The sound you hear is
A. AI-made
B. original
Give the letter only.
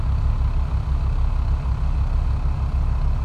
B